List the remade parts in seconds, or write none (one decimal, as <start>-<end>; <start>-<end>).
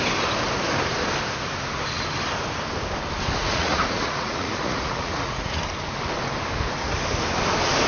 3.4-5.6